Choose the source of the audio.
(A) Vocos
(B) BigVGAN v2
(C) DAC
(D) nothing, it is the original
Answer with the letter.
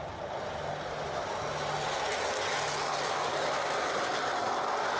D